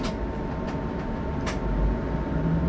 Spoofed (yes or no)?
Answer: no